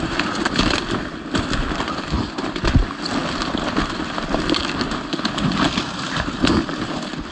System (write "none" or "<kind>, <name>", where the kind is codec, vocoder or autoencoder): none